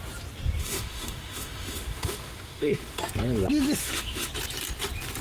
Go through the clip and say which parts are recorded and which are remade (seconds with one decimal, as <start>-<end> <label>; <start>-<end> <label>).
0.0-0.6 recorded; 0.6-3.0 remade; 3.0-3.8 recorded; 3.8-4.3 remade; 4.3-5.2 recorded